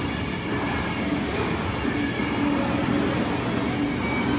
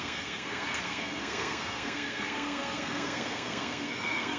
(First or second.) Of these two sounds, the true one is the first